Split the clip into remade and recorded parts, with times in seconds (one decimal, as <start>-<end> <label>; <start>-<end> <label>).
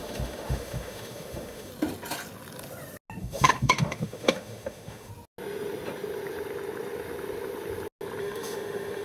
0.0-1.7 remade; 1.7-3.2 recorded; 3.2-5.1 remade; 5.1-8.2 recorded; 8.2-9.0 remade